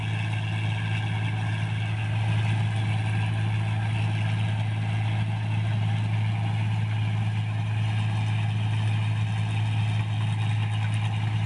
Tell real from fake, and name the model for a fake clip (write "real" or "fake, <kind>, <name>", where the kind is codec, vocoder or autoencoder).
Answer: real